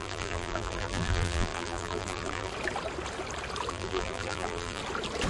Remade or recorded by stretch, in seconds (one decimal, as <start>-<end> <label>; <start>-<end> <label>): 0.0-2.5 remade; 2.5-3.7 recorded; 3.7-4.8 remade; 4.8-5.3 recorded